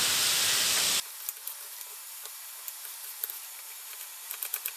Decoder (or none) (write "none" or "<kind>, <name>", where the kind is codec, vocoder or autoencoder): none